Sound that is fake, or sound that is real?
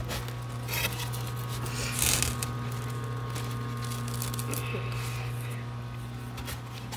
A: real